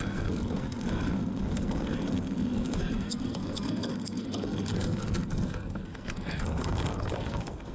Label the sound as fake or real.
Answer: fake